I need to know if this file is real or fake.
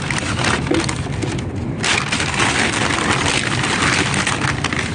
real